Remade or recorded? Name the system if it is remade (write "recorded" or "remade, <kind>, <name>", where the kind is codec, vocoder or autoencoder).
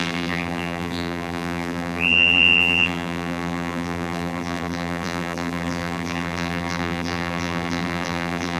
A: remade, vocoder, BigVGAN v2